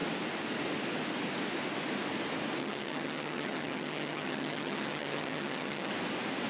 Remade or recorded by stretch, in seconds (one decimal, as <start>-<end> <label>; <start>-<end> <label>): 0.0-2.6 recorded; 2.6-5.9 remade; 5.9-6.5 recorded